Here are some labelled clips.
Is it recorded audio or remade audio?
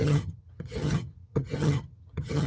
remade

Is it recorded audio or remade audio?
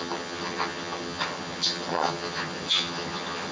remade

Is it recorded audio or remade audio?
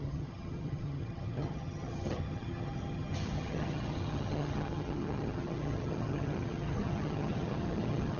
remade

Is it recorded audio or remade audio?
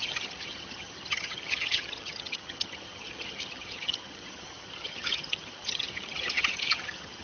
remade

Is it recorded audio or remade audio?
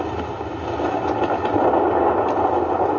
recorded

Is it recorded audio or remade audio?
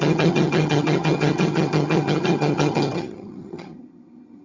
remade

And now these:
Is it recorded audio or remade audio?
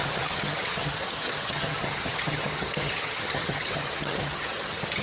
remade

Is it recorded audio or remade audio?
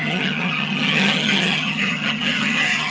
remade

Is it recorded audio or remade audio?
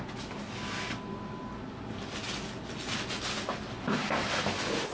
recorded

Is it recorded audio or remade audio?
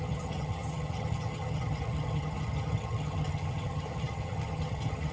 remade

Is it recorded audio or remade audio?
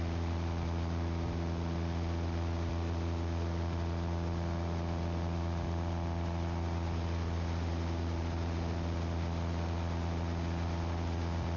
recorded